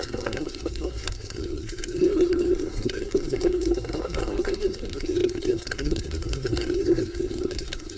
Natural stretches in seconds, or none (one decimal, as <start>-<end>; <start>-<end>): none